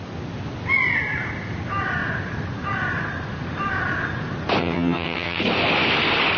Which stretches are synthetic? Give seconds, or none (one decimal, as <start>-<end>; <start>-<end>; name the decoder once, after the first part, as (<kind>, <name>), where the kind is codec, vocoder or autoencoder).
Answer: 4.6-5.4 (vocoder, HiFi-GAN)